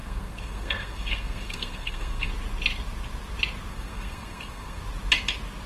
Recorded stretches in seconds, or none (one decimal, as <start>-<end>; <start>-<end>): 2.3-3.7; 4.8-5.7